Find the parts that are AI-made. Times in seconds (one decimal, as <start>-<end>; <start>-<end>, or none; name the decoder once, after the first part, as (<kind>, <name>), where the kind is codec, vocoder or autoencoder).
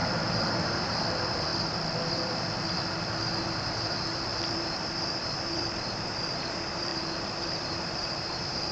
0.0-1.5 (vocoder, BigVGAN v2); 2.1-8.7